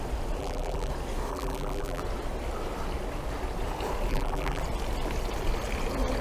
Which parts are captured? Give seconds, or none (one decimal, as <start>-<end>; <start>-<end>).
0.0-0.4; 0.9-1.3; 2.0-4.1; 4.6-6.2